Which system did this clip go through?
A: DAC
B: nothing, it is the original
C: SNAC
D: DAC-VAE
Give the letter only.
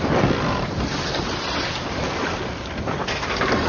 B